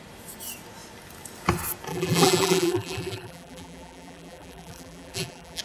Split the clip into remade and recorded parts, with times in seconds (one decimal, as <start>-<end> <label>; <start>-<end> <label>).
0.0-1.9 recorded; 1.9-5.6 remade